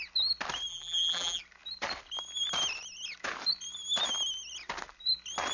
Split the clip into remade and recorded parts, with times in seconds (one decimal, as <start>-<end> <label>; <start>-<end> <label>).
0.0-0.7 recorded; 0.7-1.4 remade; 1.4-5.5 recorded